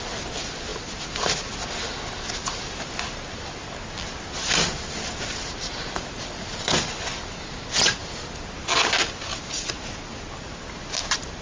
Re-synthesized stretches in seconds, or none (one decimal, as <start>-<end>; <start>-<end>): none